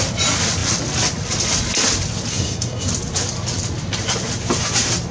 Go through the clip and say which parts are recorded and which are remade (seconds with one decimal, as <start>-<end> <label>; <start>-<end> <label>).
0.0-2.3 recorded; 2.3-2.9 remade; 2.9-5.1 recorded